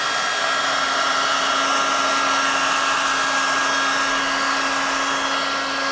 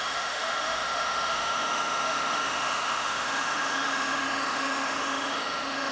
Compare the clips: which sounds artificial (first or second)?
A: second